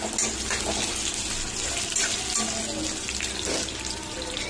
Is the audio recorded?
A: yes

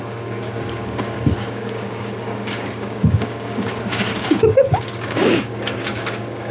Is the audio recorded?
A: no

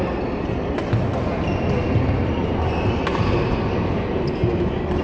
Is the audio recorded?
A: yes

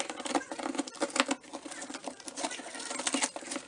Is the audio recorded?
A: yes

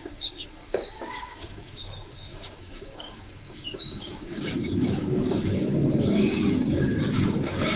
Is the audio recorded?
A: no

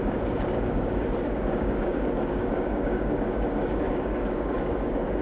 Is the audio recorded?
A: no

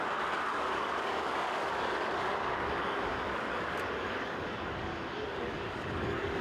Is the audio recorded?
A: no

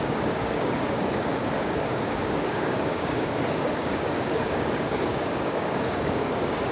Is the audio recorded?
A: no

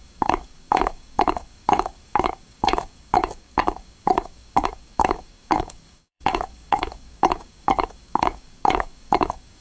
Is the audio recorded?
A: no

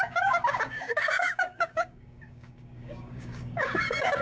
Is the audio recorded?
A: no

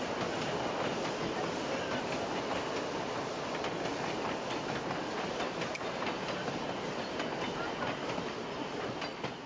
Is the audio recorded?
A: yes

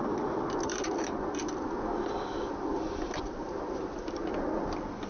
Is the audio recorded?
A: yes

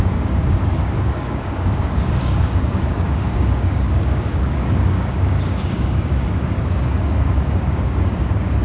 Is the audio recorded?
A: no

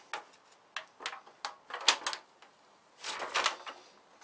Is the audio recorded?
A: yes